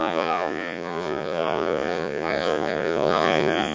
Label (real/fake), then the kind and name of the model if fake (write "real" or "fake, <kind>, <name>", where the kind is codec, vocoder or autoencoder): fake, vocoder, Vocos